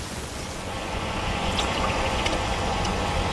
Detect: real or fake fake